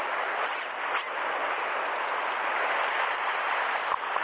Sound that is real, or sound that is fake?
real